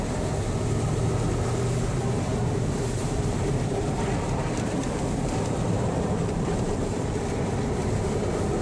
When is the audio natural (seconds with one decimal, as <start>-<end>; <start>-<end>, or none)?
0.0-2.3; 7.2-8.6